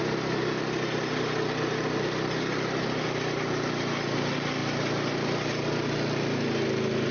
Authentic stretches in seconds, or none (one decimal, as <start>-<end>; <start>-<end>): 0.0-7.1